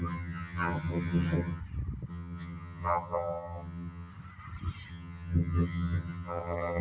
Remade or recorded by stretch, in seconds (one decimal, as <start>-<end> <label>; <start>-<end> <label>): 0.0-1.6 remade; 1.6-2.1 recorded; 2.1-4.1 remade; 4.1-4.9 recorded; 4.9-6.8 remade